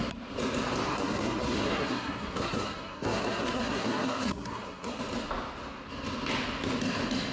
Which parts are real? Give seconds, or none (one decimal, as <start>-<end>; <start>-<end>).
0.0-0.9; 5.0-7.3